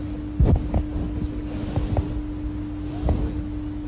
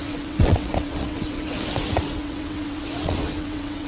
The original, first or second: first